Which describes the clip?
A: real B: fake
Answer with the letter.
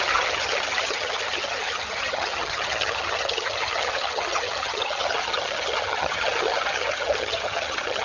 B